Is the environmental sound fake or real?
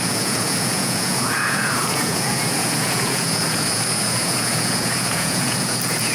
fake